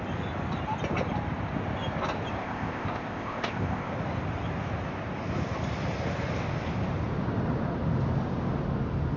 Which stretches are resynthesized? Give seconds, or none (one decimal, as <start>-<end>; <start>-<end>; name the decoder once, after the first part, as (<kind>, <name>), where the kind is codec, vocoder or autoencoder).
2.4-3.9 (codec, ZipCodec)